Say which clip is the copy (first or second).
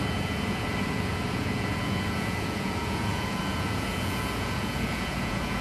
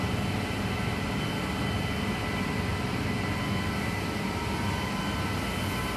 first